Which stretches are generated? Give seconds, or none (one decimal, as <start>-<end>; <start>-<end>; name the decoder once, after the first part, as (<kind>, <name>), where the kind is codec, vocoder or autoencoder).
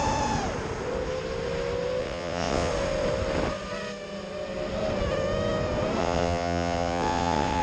2.0-2.7 (vocoder, WaveNeXt); 6.0-7.6